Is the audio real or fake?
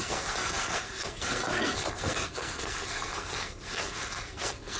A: fake